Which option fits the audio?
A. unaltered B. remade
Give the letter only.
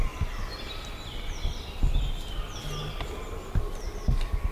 A